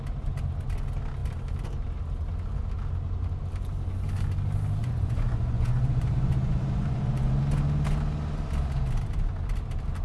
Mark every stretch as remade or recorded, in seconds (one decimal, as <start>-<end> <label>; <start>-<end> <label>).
0.0-4.8 recorded; 4.8-7.4 remade; 7.4-10.0 recorded

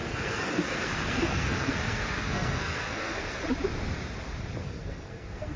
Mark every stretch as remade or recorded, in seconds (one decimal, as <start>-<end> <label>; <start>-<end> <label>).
0.0-3.4 remade; 3.4-4.6 recorded; 4.6-5.6 remade

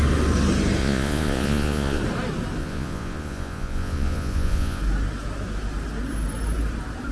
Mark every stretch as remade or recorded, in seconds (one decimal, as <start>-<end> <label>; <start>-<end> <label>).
0.0-0.8 recorded; 0.8-2.0 remade; 2.0-2.6 recorded; 2.6-4.8 remade; 4.8-7.1 recorded

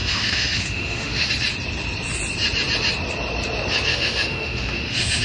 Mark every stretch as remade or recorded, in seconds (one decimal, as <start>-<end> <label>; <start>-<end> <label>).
0.0-1.3 remade; 1.3-3.9 recorded; 3.9-5.2 remade

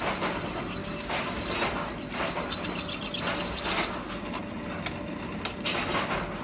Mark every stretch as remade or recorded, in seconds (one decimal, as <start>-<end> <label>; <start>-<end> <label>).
0.0-0.8 recorded; 0.8-1.4 remade; 1.4-6.4 recorded

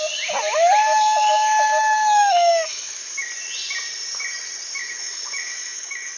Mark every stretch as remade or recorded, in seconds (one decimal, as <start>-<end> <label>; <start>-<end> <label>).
0.0-0.8 recorded; 0.8-3.3 remade; 3.3-4.8 recorded; 4.8-6.2 remade

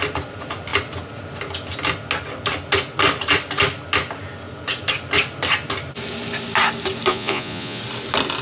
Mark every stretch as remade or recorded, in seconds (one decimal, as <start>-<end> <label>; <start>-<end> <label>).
0.0-7.1 recorded; 7.1-7.8 remade; 7.8-8.4 recorded